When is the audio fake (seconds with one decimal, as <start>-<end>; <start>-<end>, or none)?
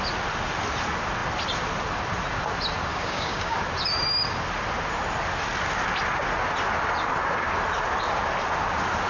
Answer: 2.9-3.6